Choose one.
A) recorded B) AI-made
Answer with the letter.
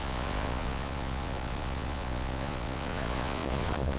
B